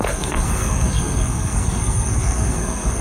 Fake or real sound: fake